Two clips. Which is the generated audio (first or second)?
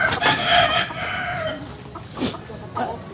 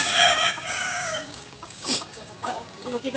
second